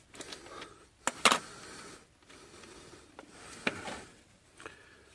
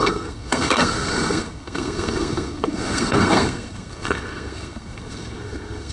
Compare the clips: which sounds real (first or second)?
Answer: first